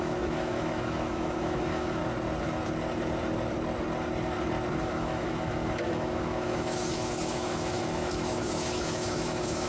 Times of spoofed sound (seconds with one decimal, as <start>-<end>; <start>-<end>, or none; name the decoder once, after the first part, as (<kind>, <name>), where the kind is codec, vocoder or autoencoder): 0.0-2.0 (autoencoder, DAC-VAE); 4.8-9.7